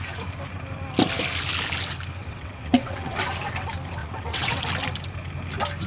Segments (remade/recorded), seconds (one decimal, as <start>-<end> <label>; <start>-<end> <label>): 0.0-2.2 recorded; 2.2-3.2 remade; 3.2-4.0 recorded; 4.0-4.6 remade; 4.6-5.9 recorded